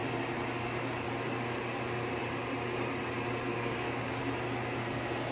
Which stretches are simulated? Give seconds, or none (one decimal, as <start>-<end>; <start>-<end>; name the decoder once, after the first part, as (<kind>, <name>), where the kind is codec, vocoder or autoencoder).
3.5-4.2 (codec, DAC)